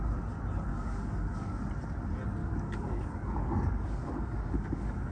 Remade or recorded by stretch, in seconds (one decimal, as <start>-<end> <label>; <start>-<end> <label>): 0.0-0.7 recorded; 0.7-1.6 remade; 1.6-2.4 recorded; 2.4-5.1 remade